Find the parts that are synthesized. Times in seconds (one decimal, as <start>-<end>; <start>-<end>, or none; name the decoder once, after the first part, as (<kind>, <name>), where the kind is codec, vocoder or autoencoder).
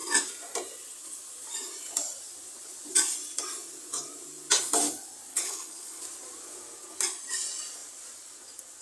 5.3-6.0 (codec, HILCodec)